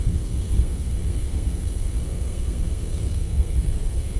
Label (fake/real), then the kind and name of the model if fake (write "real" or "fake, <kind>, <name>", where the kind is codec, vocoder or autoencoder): fake, codec, SNAC